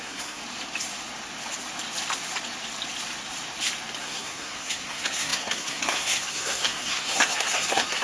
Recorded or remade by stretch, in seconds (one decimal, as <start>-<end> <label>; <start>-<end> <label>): 0.0-0.4 remade; 0.4-4.0 recorded; 4.0-8.0 remade